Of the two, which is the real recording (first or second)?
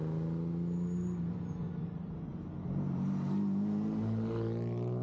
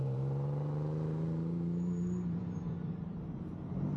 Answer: first